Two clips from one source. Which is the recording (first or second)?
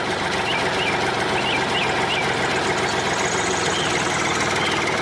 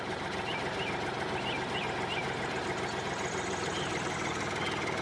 first